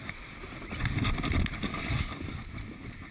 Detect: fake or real real